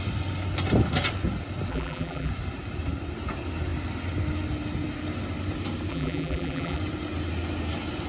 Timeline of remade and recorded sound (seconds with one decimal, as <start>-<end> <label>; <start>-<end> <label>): 0.0-1.7 recorded; 1.7-2.3 remade; 2.3-5.9 recorded; 5.9-6.8 remade; 6.8-8.1 recorded